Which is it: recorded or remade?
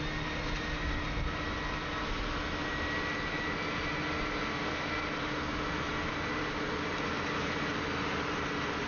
recorded